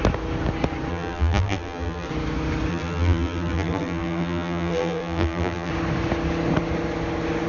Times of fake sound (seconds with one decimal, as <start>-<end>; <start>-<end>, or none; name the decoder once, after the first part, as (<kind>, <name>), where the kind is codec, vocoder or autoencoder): 0.9-2.1 (vocoder, BigVGAN v2); 2.7-5.7